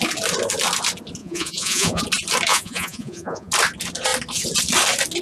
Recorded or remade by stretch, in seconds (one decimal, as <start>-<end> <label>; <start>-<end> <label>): 0.0-1.2 recorded; 1.2-2.0 remade; 2.0-2.5 recorded; 2.5-3.5 remade; 3.5-5.2 recorded